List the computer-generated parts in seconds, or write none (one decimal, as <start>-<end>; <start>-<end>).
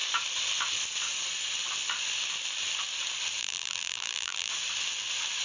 3.4-4.5